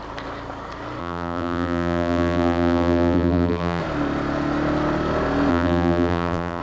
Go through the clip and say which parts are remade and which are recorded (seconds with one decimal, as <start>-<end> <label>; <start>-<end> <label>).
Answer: 0.0-1.0 recorded; 1.0-3.8 remade; 3.8-5.5 recorded; 5.5-6.6 remade